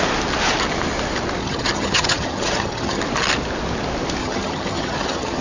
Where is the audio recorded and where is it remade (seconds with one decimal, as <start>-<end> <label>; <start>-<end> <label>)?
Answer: 0.0-1.4 recorded; 1.4-3.0 remade; 3.0-4.2 recorded; 4.2-5.4 remade